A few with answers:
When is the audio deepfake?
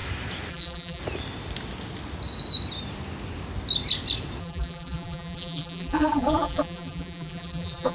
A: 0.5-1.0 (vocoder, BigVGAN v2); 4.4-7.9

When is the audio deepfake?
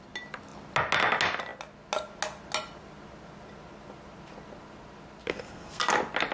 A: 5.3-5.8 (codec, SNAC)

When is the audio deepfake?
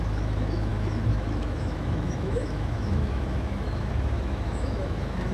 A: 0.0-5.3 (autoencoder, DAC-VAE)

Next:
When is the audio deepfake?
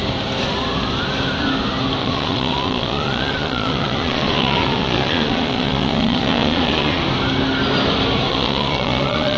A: 2.0-7.0 (vocoder, Vocos); 8.3-9.4